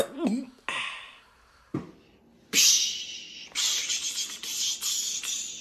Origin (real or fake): real